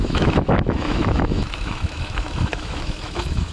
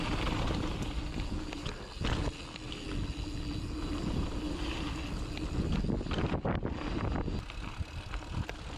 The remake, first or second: first